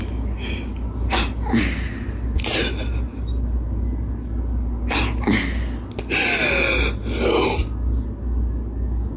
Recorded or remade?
recorded